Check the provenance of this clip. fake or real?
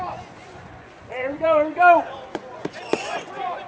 fake